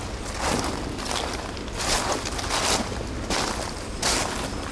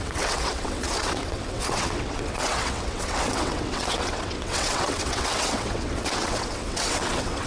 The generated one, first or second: second